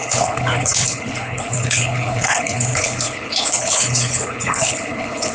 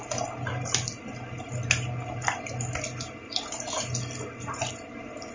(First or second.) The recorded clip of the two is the second